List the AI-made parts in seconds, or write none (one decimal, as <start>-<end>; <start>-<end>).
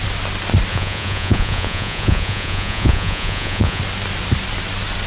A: 0.7-3.8